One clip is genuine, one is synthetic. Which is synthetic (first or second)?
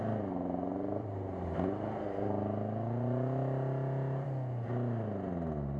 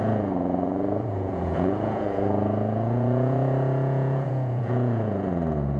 second